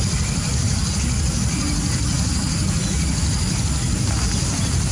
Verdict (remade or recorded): recorded